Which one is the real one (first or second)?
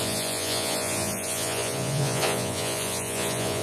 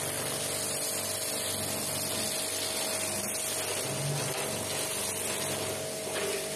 second